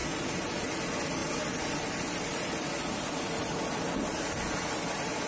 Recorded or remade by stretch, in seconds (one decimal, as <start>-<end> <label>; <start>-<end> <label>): 0.0-0.7 remade; 0.7-5.3 recorded